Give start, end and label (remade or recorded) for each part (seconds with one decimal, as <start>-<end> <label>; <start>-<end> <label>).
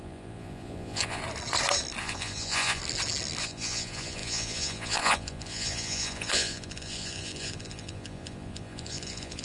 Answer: 0.0-1.2 remade; 1.2-2.0 recorded; 2.0-2.8 remade; 2.8-3.4 recorded; 3.4-9.4 remade